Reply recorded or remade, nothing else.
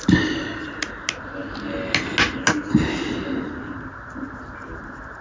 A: recorded